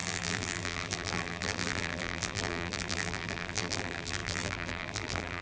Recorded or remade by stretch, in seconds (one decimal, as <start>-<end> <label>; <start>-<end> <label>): 0.0-5.4 remade